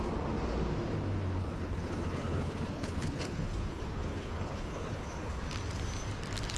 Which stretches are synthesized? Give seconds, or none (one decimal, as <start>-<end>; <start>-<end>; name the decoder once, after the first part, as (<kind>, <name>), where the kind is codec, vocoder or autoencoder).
1.4-5.4 (codec, HILCodec)